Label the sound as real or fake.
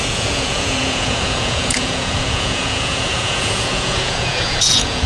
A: fake